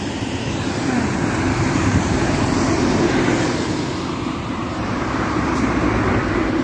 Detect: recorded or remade remade